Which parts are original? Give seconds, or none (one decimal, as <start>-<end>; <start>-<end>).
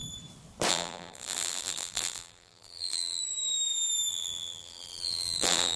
0.0-0.7; 3.2-4.1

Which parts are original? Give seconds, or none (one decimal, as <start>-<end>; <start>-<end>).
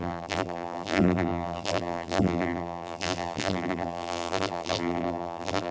none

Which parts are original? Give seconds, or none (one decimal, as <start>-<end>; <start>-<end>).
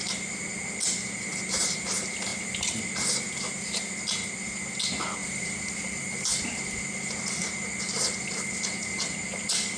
0.0-2.3; 2.8-5.2; 6.3-9.8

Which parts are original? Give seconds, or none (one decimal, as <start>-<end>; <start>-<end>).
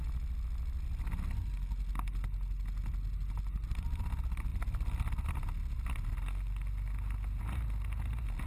0.0-8.5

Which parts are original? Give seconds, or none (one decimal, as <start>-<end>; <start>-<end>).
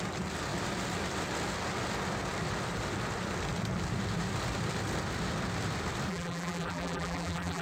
0.0-6.1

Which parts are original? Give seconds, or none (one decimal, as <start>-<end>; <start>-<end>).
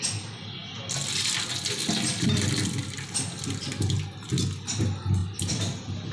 0.0-5.2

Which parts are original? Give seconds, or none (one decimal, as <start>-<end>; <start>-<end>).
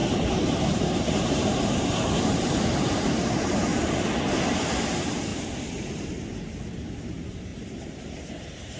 3.7-4.8; 5.3-7.1; 7.5-8.3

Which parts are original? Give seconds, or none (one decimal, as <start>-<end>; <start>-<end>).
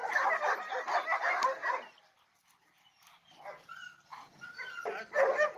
3.4-5.6